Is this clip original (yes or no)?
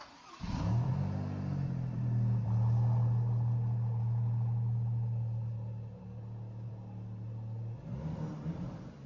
yes